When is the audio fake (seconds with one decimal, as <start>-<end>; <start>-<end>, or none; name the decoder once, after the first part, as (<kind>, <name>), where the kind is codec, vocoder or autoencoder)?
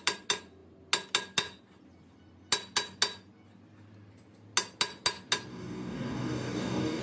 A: 5.5-7.0 (codec, DAC)